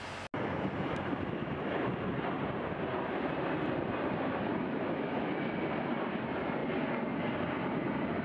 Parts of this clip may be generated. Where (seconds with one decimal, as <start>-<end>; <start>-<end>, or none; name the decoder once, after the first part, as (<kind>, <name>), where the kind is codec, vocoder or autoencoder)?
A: 4.5-5.3 (autoencoder, DAC-VAE)